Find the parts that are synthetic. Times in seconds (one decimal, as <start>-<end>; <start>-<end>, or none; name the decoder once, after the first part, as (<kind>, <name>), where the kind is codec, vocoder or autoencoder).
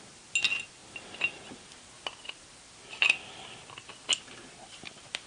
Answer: none